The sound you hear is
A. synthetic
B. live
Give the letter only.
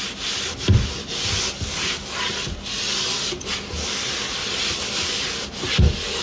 B